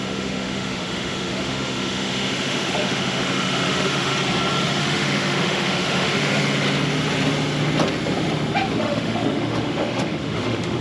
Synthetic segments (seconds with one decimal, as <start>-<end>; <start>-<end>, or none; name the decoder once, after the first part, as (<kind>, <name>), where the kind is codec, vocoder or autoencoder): 0.0-4.1 (autoencoder, DAC-VAE); 4.8-6.3; 8.8-10.8